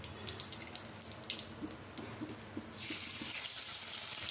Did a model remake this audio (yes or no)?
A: no